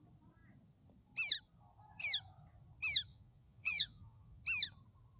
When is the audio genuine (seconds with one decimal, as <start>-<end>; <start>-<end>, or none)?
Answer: 0.0-3.1; 4.4-5.2